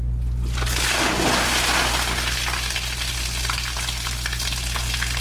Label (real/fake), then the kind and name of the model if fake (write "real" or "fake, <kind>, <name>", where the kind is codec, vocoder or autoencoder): real